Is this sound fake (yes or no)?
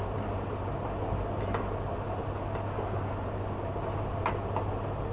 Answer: no